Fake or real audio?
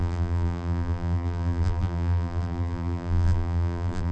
fake